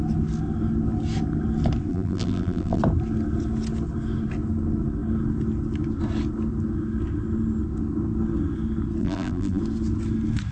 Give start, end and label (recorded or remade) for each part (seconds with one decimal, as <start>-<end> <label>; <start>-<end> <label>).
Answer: 0.0-1.9 recorded; 1.9-2.8 remade; 2.8-9.0 recorded; 9.0-9.6 remade; 9.6-10.5 recorded